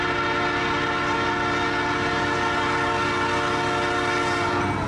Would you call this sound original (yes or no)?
yes